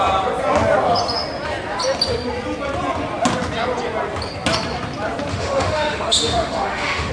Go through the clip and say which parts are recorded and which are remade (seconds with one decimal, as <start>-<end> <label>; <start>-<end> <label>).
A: 0.0-5.3 recorded; 5.3-7.1 remade